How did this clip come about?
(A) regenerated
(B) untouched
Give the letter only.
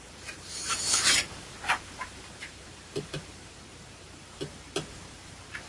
A